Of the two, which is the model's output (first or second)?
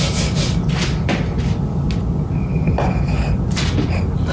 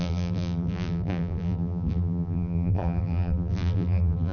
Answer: second